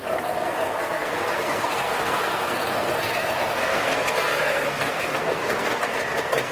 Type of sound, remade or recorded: remade